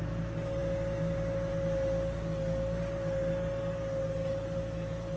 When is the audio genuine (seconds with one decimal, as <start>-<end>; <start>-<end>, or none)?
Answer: 0.0-5.2